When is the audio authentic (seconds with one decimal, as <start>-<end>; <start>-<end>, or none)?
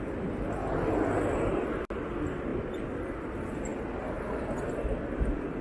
0.0-5.6